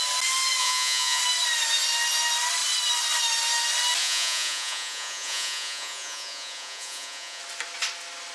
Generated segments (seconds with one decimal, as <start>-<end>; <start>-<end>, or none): 0.6-1.2; 4.0-7.4